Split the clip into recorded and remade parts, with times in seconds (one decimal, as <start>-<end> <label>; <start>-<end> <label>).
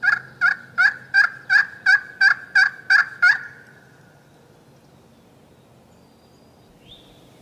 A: 0.0-7.4 recorded